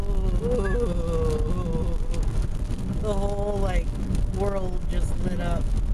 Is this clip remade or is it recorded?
recorded